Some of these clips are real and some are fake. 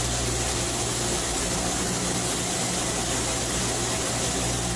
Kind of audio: real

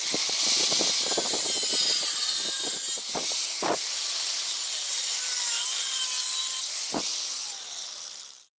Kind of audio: real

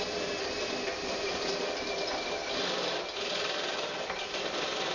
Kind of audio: real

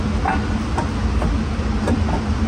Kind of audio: real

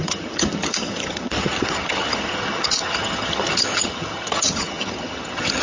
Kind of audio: fake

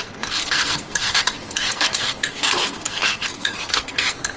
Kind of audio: fake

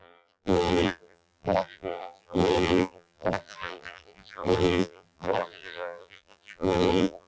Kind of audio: fake